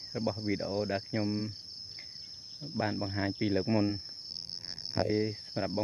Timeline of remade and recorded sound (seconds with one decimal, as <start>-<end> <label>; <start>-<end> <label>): 0.0-4.3 recorded; 4.3-5.1 remade; 5.1-5.8 recorded